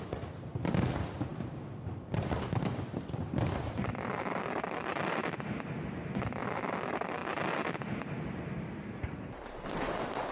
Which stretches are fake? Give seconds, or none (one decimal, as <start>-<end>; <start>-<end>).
1.3-5.2